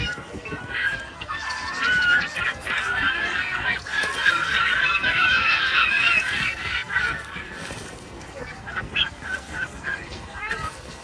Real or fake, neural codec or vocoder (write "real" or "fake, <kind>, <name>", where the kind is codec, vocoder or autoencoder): fake, codec, SNAC